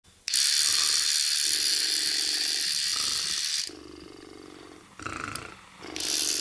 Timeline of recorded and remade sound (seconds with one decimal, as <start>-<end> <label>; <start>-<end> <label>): 0.0-6.4 recorded